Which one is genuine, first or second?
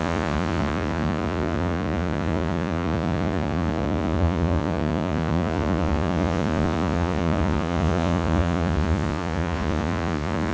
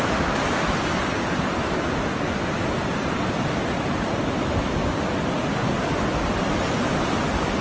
second